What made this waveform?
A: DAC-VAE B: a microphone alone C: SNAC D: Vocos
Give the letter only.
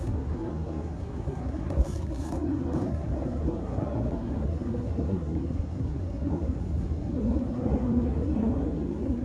C